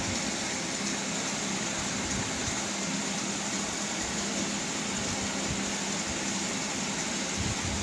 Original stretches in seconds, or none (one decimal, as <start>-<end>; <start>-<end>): 0.0-7.8